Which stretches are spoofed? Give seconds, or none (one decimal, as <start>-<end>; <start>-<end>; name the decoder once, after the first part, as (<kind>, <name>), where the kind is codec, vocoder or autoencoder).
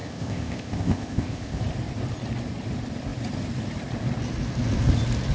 0.0-1.6 (codec, ZipCodec)